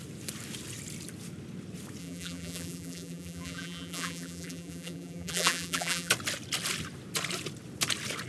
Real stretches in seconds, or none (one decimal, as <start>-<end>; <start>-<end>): 0.0-2.0; 6.1-8.3